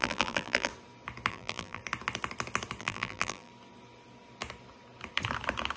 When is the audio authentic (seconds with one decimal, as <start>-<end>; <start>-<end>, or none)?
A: 0.7-1.3; 1.8-2.8; 3.5-5.8